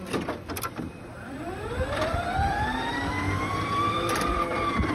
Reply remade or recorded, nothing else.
remade